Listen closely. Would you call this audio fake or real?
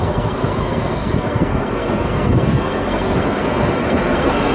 fake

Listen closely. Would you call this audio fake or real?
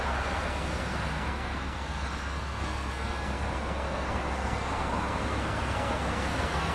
fake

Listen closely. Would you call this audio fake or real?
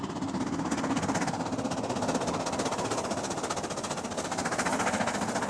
real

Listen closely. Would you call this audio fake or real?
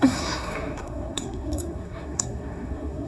fake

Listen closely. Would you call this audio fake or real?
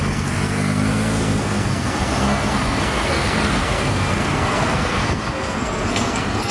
fake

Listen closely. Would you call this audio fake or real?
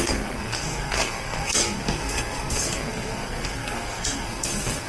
fake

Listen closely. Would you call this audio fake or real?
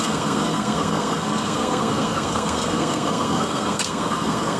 fake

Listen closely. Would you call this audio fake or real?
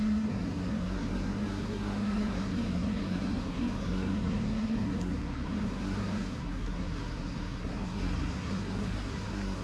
fake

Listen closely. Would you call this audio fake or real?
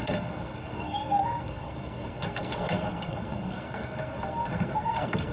fake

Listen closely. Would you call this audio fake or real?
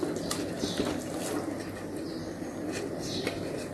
real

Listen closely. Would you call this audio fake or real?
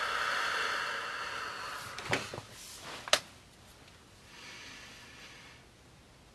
real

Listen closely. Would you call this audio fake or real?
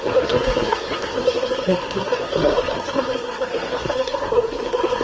fake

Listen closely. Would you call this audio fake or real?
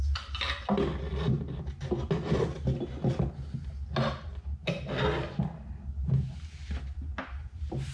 real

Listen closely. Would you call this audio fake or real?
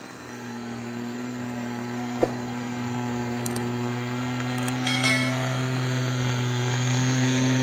fake